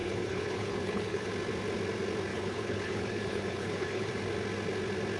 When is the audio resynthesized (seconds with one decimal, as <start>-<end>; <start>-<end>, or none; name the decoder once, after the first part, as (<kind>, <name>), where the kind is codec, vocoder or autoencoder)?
0.0-1.3 (codec, HILCodec); 2.3-4.1